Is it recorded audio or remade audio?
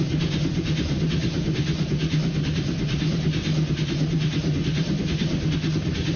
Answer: recorded